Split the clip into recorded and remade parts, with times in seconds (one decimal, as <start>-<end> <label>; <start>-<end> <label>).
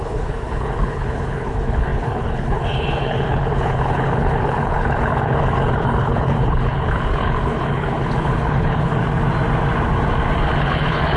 0.0-9.0 remade; 9.0-10.6 recorded; 10.6-11.2 remade